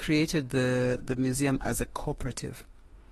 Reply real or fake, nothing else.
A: fake